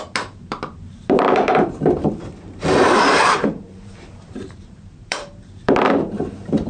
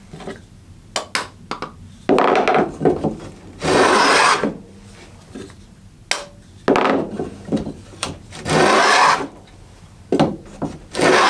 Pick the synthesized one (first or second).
first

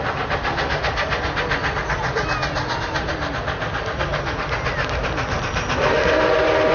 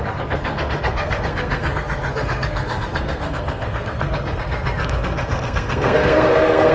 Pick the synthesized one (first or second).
second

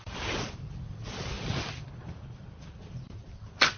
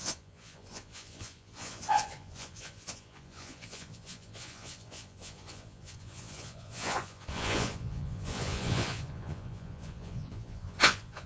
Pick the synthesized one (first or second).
second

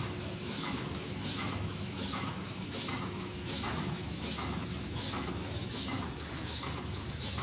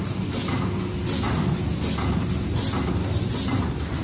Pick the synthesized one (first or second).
first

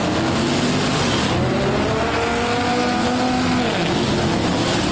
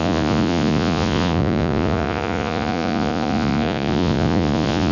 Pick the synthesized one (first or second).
second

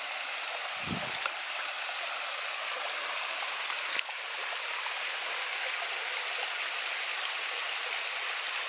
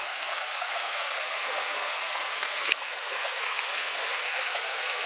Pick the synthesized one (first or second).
second